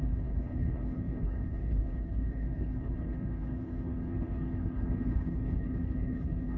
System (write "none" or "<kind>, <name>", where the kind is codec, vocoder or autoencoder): codec, HILCodec